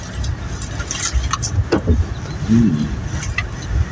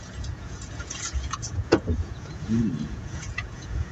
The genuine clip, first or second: first